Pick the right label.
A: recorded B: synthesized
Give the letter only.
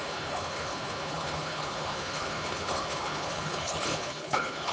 B